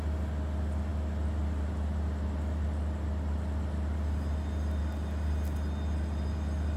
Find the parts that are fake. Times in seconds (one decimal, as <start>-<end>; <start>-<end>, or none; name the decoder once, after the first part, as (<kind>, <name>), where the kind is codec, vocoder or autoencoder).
none